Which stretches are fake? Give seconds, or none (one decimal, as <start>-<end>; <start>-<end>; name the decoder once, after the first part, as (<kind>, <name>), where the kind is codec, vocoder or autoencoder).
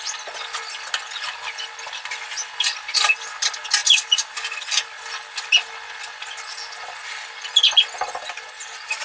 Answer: none